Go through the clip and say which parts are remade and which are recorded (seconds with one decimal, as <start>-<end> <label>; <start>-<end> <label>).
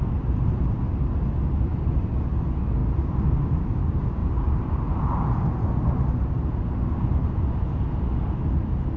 0.0-4.2 recorded; 4.2-5.1 remade; 5.1-9.0 recorded